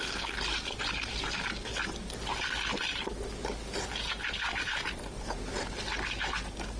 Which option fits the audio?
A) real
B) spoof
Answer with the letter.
A